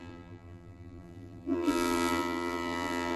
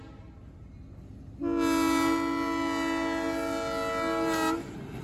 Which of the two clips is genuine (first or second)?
second